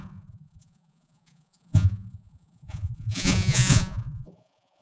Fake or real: fake